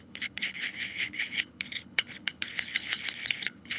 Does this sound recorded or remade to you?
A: remade